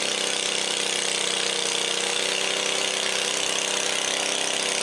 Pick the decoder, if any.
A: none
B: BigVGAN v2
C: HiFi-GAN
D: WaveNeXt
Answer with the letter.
A